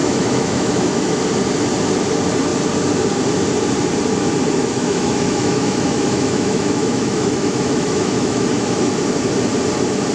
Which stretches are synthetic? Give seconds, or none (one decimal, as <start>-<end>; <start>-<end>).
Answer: 0.0-1.2; 4.6-8.9